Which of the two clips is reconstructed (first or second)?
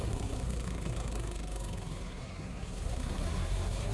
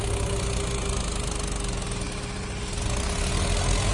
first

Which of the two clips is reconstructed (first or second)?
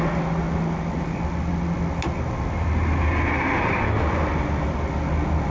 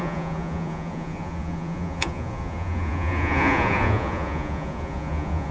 second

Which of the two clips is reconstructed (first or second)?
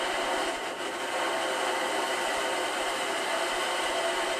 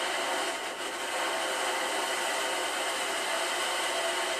first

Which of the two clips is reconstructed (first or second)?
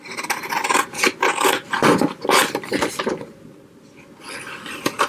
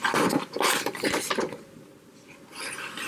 second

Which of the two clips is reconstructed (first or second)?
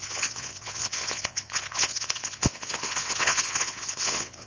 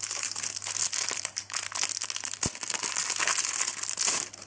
first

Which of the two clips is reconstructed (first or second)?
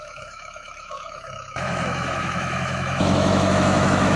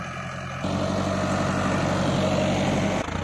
first